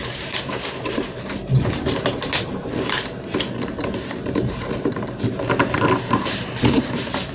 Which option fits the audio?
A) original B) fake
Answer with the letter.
B